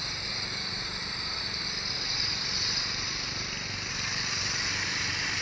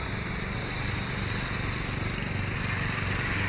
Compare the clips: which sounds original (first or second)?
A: second